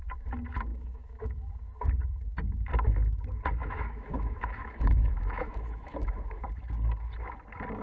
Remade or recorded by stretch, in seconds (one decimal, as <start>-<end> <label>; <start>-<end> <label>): 0.0-0.7 recorded; 0.7-1.5 remade; 1.5-3.6 recorded; 3.6-6.4 remade; 6.4-7.8 recorded

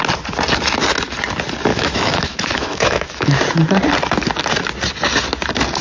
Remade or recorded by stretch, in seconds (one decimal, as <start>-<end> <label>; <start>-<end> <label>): 0.0-1.7 recorded; 1.7-3.4 remade; 3.4-5.8 recorded